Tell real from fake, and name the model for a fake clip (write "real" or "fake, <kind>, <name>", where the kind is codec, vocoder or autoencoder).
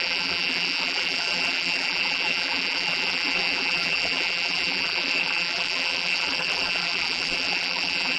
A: fake, vocoder, BigVGAN v2